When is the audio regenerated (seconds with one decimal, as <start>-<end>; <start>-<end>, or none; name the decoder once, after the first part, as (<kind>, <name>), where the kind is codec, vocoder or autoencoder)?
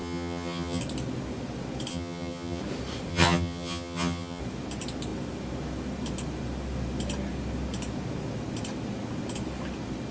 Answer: 0.0-0.8 (vocoder, HiFi-GAN); 1.9-2.6; 3.1-4.4